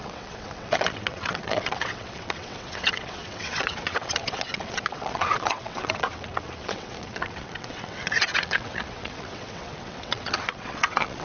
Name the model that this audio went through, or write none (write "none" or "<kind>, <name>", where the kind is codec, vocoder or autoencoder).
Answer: vocoder, WaveNeXt